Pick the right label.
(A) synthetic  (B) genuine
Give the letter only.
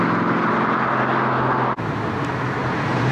B